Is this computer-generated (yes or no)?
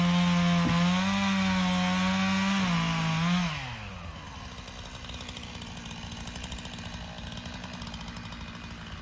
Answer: no